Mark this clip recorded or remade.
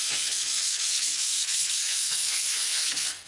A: remade